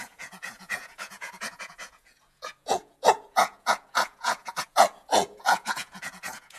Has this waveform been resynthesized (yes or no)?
yes